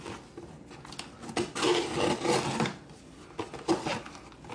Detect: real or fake real